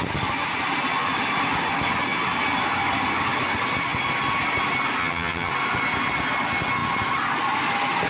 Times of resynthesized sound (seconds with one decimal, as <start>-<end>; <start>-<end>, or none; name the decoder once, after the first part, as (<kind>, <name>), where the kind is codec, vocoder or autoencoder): 5.0-5.5 (vocoder, HiFi-GAN)